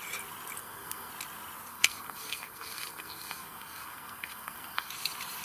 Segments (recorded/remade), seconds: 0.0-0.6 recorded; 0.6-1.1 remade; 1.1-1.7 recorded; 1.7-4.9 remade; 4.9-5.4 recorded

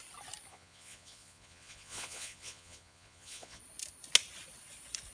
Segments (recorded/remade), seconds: 0.0-0.5 recorded; 0.5-3.6 remade; 3.6-5.1 recorded

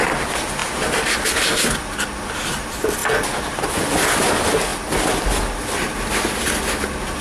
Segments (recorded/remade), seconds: 0.0-7.2 recorded